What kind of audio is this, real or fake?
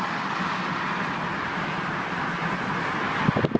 real